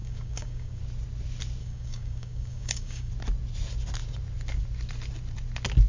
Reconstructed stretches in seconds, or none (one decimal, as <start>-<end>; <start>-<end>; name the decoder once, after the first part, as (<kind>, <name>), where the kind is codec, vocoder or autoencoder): 0.0-0.8 (codec, DAC); 1.6-3.1